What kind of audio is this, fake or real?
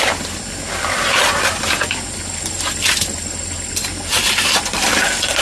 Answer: real